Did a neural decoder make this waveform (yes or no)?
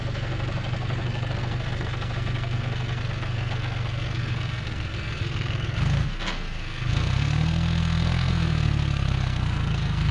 yes